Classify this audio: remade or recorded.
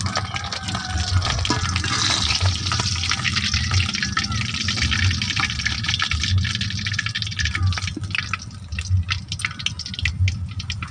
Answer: recorded